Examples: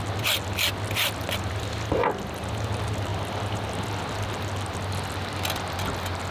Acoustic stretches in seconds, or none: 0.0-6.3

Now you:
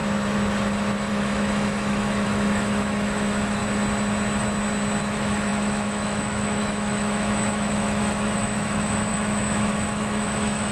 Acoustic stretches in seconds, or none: 0.0-1.1; 3.6-5.0

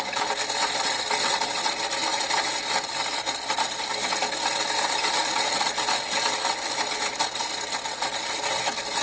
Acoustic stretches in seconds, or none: 0.0-9.0

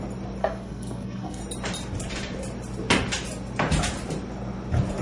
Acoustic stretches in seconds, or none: 0.0-0.4; 1.4-5.0

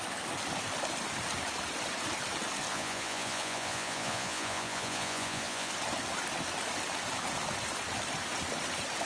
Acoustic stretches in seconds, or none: 0.0-2.7; 5.7-9.1